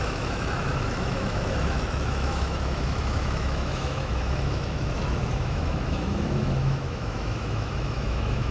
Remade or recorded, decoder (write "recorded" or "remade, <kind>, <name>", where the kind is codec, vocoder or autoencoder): remade, autoencoder, DAC-VAE